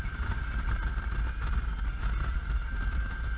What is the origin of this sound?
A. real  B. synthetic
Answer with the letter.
A